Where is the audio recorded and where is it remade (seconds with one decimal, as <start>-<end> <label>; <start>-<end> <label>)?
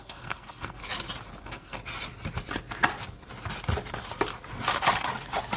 0.0-0.8 remade; 0.8-1.4 recorded; 1.4-1.8 remade; 1.8-5.6 recorded